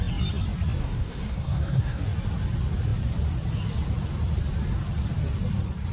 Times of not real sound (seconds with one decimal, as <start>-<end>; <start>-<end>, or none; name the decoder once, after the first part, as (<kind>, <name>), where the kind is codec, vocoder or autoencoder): 0.8-2.0 (codec, SNAC)